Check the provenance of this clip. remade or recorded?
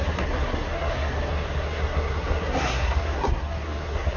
remade